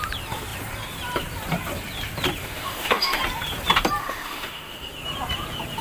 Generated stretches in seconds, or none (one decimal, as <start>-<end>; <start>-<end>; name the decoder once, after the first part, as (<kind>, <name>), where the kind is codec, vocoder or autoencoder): 2.4-3.2 (autoencoder, DAC-VAE); 4.0-4.9